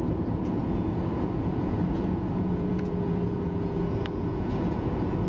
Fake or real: fake